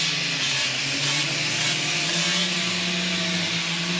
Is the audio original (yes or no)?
yes